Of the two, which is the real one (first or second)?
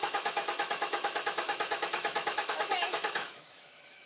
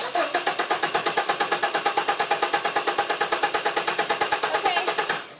second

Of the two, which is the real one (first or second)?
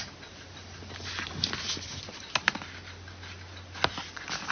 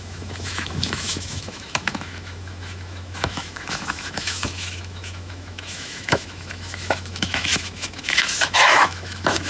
first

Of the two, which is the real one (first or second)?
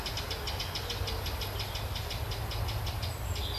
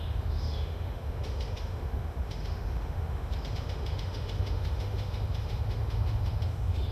first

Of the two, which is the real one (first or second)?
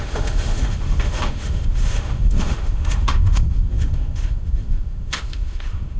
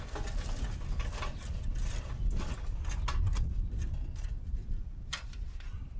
second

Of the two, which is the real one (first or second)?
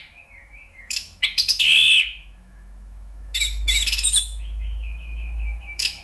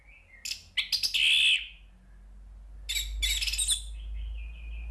second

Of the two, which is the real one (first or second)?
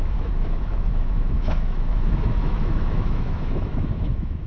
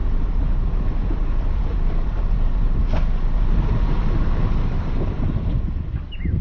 second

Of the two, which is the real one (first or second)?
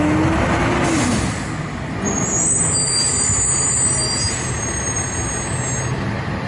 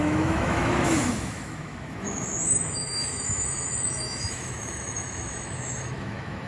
first